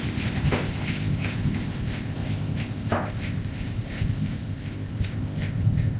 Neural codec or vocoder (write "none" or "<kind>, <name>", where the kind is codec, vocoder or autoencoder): codec, ZipCodec